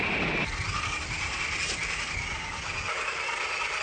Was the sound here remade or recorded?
recorded